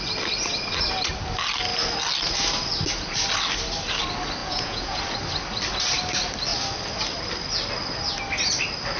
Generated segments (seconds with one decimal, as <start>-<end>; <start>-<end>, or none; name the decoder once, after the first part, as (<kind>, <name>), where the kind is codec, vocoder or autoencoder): 4.4-5.0 (vocoder, Vocos)